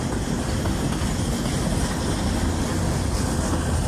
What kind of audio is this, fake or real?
real